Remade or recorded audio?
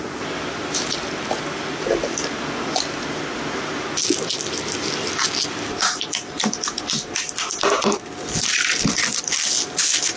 recorded